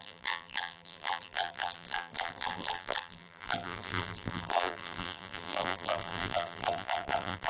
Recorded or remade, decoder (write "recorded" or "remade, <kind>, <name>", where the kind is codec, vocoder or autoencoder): remade, vocoder, BigVGAN v2